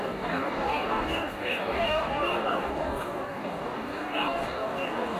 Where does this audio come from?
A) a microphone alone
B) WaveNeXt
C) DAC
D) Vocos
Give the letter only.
C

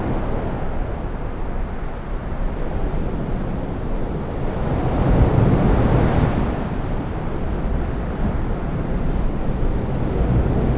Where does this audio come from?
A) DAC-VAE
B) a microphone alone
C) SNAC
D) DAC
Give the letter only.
B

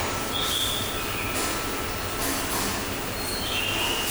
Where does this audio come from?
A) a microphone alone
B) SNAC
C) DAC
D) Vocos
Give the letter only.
A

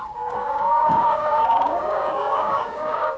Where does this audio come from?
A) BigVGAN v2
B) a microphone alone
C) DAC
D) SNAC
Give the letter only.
C